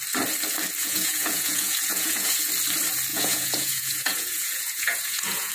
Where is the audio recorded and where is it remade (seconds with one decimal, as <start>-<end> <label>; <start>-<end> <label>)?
0.0-0.8 recorded; 0.8-2.5 remade; 2.5-3.1 recorded; 3.1-5.5 remade